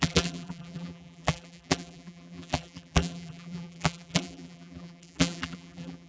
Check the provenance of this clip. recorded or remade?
remade